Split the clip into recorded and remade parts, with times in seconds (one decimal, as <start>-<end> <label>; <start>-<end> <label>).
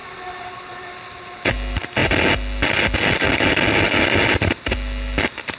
0.0-5.6 recorded